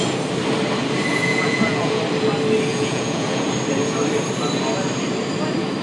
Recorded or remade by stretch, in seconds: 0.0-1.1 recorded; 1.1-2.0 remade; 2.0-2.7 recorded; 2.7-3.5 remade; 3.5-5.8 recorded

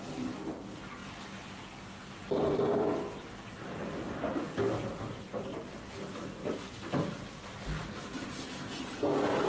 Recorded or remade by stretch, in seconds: 0.0-9.5 recorded

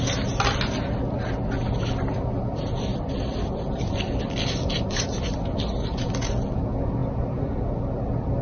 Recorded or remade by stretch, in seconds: 0.0-2.9 recorded; 2.9-5.4 remade; 5.4-8.4 recorded

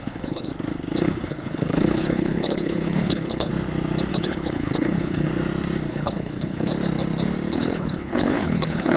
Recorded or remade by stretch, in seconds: 0.0-0.5 remade; 0.5-1.0 recorded; 1.0-3.5 remade; 3.5-4.1 recorded; 4.1-5.3 remade; 5.3-5.9 recorded; 5.9-6.7 remade; 6.7-7.5 recorded; 7.5-9.0 remade